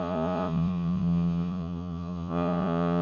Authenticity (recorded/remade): remade